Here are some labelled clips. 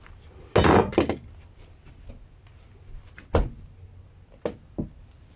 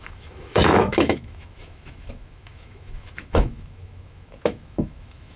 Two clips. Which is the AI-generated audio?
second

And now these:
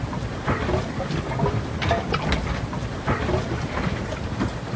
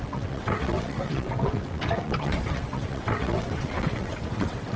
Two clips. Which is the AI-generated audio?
second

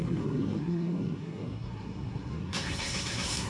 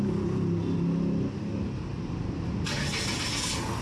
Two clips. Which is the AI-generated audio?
first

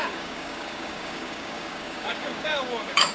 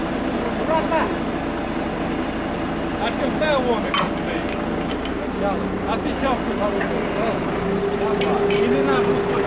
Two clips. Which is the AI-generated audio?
first